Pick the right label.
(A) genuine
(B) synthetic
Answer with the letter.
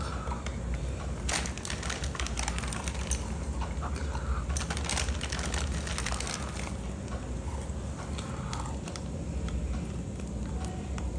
A